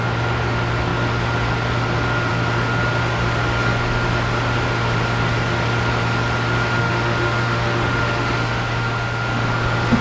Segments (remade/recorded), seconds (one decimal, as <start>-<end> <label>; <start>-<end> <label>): 0.0-6.8 recorded; 6.8-9.5 remade; 9.5-10.0 recorded

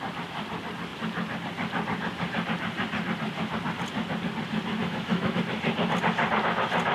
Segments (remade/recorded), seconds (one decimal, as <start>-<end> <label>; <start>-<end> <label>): 0.0-4.8 recorded; 4.8-5.4 remade; 5.4-6.9 recorded